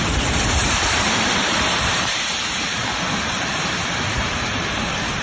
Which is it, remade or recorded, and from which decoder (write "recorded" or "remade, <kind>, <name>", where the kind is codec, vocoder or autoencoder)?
remade, vocoder, BigVGAN v2